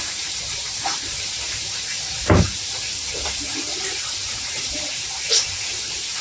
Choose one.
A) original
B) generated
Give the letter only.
B